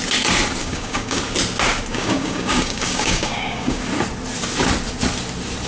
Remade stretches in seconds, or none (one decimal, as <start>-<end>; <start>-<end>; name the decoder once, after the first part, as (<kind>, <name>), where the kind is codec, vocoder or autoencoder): 0.6-1.2 (codec, DAC); 1.9-3.8